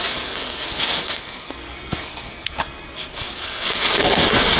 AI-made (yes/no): yes